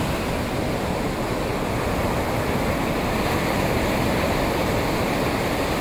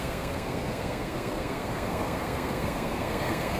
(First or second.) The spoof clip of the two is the second